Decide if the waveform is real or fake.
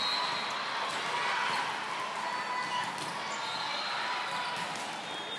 real